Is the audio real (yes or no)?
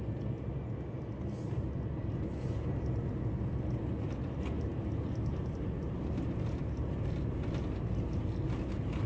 yes